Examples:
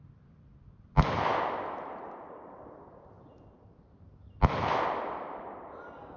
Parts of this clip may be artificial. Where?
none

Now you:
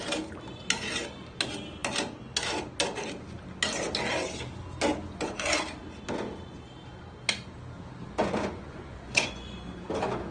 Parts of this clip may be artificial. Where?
8.2-9.8 (vocoder, Vocos)

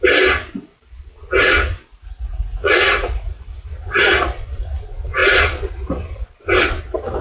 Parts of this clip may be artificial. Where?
1.9-3.4 (vocoder, Vocos)

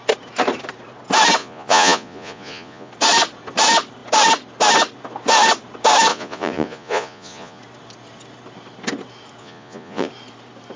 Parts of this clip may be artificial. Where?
1.4-2.9 (vocoder, Vocos); 6.1-7.6; 9.4-10.1

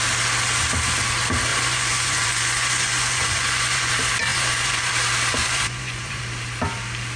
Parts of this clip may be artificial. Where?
1.5-3.9 (vocoder, Vocos); 4.3-4.9; 5.4-6.2

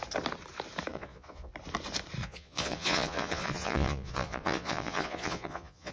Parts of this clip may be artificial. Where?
0.9-1.5 (vocoder, Vocos); 2.2-5.9